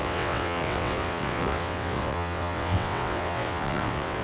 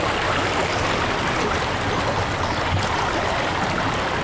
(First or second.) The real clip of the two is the second